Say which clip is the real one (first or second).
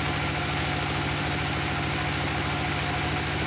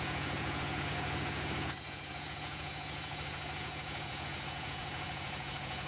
first